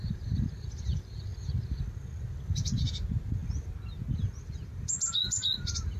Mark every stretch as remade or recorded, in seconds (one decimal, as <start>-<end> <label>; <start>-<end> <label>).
0.0-1.3 remade; 1.3-1.9 recorded; 1.9-3.4 remade; 3.4-5.1 recorded; 5.1-6.0 remade